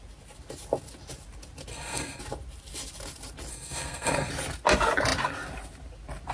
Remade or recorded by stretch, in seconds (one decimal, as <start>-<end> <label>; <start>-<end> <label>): 0.0-1.7 recorded; 1.7-2.2 remade; 2.2-3.5 recorded; 3.5-4.3 remade; 4.3-6.3 recorded

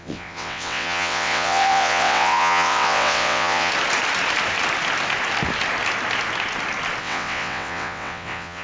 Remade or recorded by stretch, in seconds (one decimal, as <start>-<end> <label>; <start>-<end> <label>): 0.0-3.7 remade; 3.7-7.0 recorded; 7.0-8.6 remade

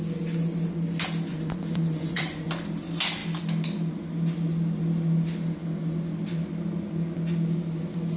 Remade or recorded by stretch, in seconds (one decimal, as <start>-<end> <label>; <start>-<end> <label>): 0.0-1.3 recorded; 1.3-2.5 remade; 2.5-8.2 recorded

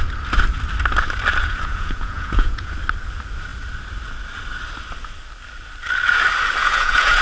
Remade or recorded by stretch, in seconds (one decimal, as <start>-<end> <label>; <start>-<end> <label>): 0.0-1.4 recorded; 1.4-2.7 remade; 2.7-6.6 recorded; 6.6-7.2 remade

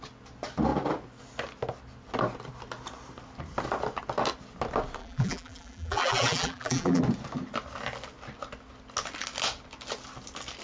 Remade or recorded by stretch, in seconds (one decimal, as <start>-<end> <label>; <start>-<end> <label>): 0.0-5.0 recorded; 5.0-7.0 remade; 7.0-10.6 recorded